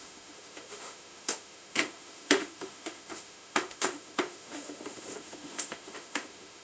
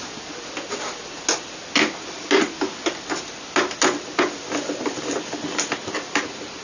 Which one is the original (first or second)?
second